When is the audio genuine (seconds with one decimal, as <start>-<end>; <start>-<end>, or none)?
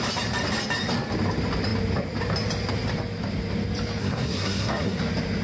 0.0-4.0; 5.0-5.4